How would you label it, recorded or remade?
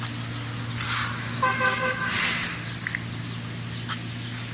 recorded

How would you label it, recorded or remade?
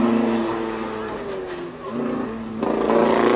recorded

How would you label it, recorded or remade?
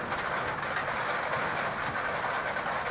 recorded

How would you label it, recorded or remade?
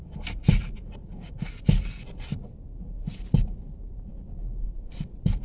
recorded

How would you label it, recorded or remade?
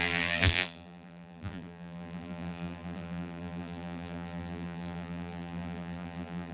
remade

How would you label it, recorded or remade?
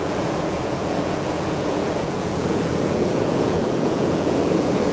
remade